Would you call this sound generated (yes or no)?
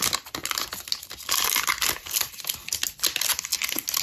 no